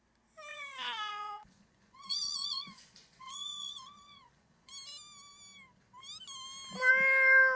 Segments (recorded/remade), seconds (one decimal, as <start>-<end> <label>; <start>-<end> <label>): 0.0-0.5 recorded; 0.5-4.7 remade; 4.7-7.6 recorded